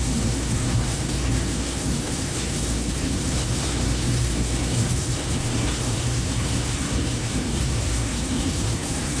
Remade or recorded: remade